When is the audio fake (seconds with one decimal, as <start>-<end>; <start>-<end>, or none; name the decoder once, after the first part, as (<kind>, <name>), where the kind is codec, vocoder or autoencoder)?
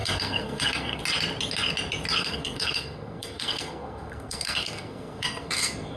0.0-1.0 (codec, SNAC); 2.2-6.0